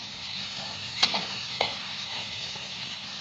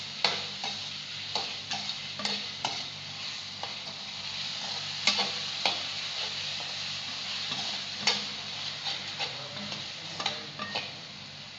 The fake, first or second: first